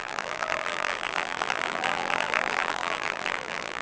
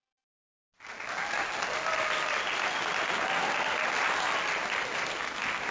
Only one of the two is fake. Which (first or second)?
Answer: first